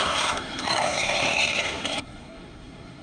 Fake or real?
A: fake